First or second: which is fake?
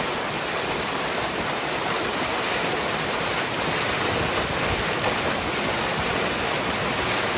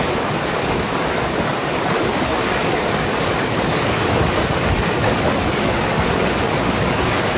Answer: second